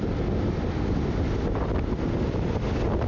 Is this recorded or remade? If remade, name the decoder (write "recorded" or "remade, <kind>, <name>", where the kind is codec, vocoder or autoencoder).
recorded